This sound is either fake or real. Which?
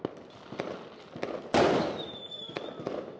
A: real